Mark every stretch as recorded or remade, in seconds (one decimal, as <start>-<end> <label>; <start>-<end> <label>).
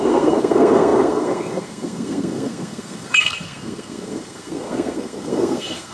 0.0-5.9 remade